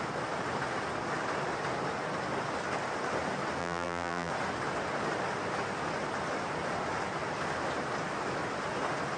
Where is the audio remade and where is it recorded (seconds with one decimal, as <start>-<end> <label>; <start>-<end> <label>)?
0.0-3.6 recorded; 3.6-4.3 remade; 4.3-9.2 recorded